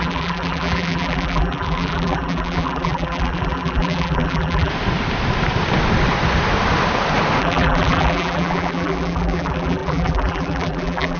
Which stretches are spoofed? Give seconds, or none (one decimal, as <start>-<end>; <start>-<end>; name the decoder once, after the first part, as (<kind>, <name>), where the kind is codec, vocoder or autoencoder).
0.0-4.7 (vocoder, BigVGAN v2); 7.4-11.2